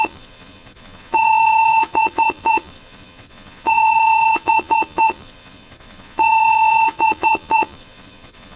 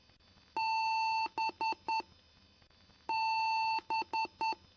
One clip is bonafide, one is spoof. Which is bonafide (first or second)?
second